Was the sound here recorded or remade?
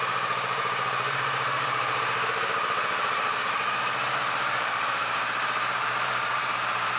remade